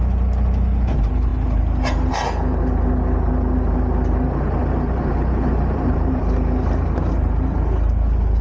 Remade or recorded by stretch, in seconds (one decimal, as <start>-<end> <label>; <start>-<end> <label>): 0.0-4.6 recorded; 4.6-6.2 remade; 6.2-8.4 recorded

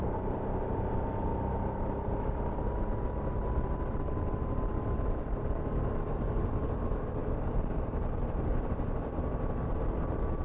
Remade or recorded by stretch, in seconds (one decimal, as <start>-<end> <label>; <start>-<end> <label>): 0.0-10.4 recorded

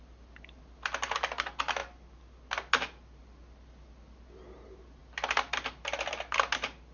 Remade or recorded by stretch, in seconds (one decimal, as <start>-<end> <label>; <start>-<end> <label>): 0.0-6.9 recorded

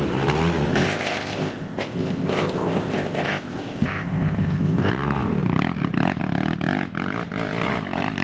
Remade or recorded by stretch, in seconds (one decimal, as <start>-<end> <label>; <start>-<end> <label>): 0.0-0.7 recorded; 0.7-4.9 remade; 4.9-8.2 recorded

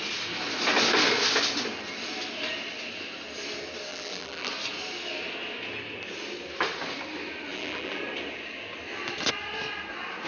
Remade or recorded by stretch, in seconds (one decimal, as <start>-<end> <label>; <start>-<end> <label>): 0.0-3.9 recorded; 3.9-4.5 remade; 4.5-7.5 recorded; 7.5-8.0 remade; 8.0-10.3 recorded

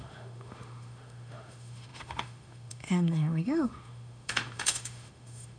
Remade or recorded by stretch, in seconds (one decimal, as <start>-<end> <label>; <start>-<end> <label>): 0.0-5.6 remade

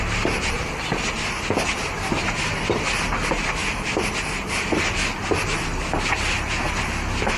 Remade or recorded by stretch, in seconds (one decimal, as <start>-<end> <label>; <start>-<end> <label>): 0.0-7.4 recorded